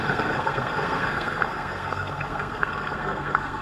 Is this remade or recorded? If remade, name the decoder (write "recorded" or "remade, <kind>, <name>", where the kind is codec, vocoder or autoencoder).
remade, codec, SNAC